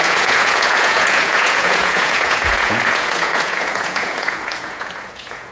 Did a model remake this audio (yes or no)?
yes